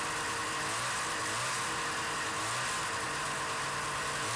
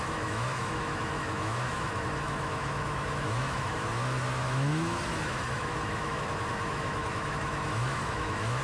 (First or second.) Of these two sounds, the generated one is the second